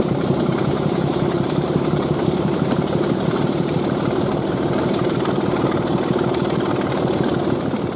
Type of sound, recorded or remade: remade